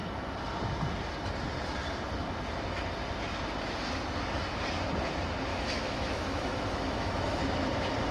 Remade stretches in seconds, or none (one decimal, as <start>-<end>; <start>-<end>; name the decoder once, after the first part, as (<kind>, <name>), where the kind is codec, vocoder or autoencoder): 5.5-7.4 (autoencoder, DAC-VAE)